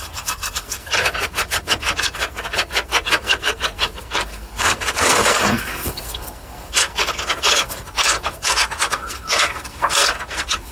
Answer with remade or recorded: remade